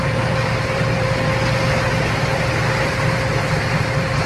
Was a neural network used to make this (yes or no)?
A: yes